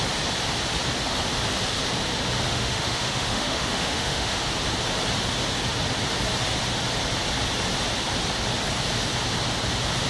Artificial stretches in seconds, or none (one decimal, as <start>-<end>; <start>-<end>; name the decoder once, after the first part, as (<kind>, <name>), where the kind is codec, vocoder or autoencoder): 2.5-4.4 (autoencoder, DAC-VAE)